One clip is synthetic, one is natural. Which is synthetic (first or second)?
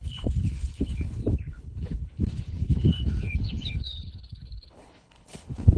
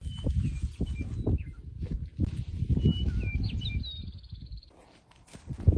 first